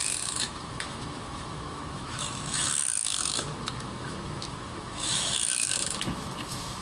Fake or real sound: fake